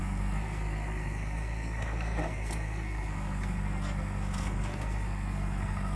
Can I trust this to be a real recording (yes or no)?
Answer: no